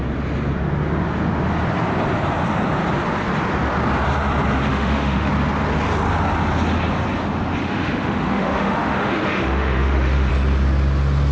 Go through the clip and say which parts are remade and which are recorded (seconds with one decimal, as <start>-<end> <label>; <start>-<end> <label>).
0.0-4.7 recorded; 4.7-5.3 remade; 5.3-7.6 recorded; 7.6-10.3 remade; 10.3-11.3 recorded